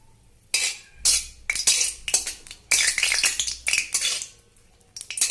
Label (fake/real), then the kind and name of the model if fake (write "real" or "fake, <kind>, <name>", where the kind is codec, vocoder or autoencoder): real